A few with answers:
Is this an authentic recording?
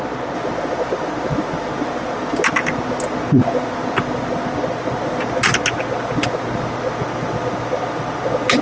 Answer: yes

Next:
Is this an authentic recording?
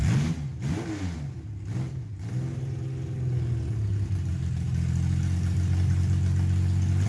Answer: yes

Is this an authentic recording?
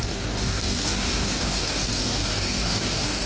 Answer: no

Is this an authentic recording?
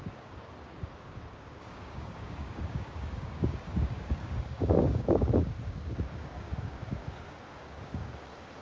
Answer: no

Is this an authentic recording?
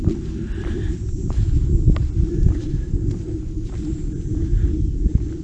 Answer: yes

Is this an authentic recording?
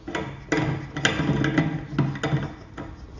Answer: yes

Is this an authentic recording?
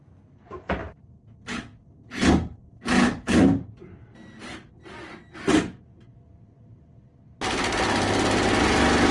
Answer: yes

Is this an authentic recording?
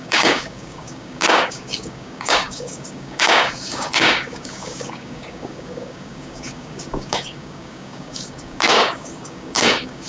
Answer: no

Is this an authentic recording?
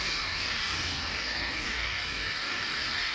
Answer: no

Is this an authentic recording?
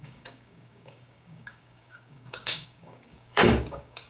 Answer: no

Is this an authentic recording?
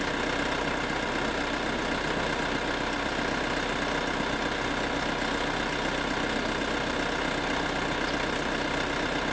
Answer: yes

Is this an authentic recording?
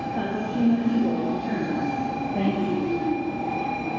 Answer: yes